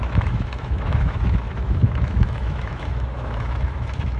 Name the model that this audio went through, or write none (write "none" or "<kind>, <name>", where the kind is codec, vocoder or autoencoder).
autoencoder, DAC-VAE